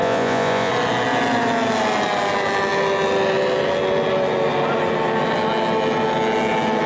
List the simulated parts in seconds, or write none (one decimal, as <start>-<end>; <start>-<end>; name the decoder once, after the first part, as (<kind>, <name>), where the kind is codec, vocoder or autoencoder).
0.0-0.7 (vocoder, Vocos)